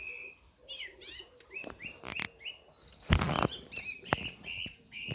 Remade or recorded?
recorded